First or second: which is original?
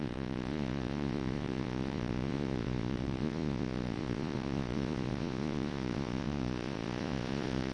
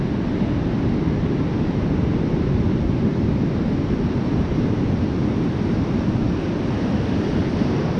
second